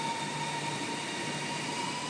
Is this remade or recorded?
recorded